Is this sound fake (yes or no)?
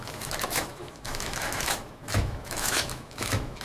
yes